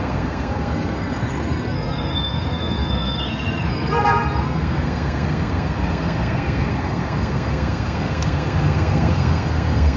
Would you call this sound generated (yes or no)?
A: yes